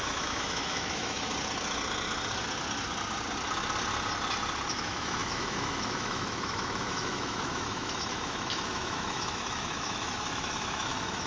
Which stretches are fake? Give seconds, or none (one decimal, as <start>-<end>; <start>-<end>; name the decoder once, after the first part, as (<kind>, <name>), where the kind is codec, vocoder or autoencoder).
0.0-1.3 (autoencoder, DAC-VAE); 4.7-11.3